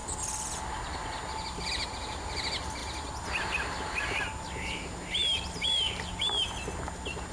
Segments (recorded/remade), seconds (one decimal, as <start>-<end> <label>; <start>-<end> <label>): 0.0-7.3 recorded